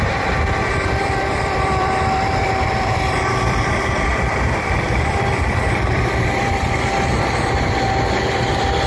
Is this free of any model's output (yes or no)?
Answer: no